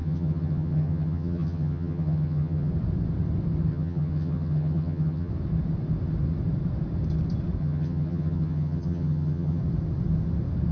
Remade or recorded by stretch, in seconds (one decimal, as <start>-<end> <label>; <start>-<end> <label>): 0.0-2.7 remade; 2.7-3.7 recorded; 3.7-5.3 remade; 5.3-7.6 recorded; 7.6-9.6 remade; 9.6-10.7 recorded